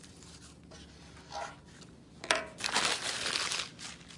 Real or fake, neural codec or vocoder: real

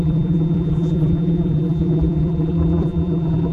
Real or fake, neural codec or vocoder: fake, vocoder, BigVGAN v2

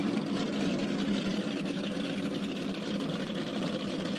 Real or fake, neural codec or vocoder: real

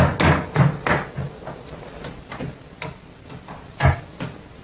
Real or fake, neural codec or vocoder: real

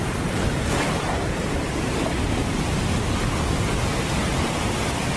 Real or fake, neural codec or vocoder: real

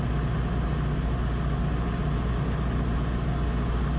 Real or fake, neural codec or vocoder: real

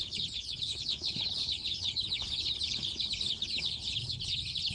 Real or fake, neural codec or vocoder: fake, codec, HILCodec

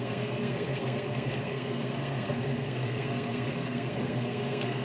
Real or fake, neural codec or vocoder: fake, codec, SNAC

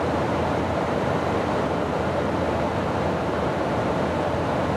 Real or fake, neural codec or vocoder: fake, vocoder, BigVGAN v2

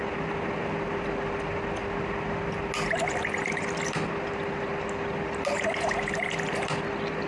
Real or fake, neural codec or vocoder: real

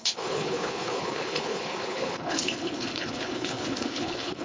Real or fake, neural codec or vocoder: fake, codec, HILCodec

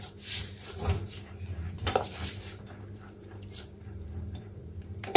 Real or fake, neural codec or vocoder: fake, vocoder, BigVGAN v2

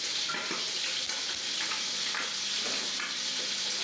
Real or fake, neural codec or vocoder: real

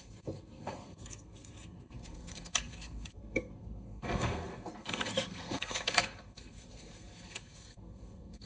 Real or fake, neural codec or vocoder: fake, codec, SNAC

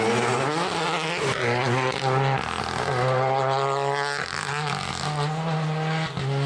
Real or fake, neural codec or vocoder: real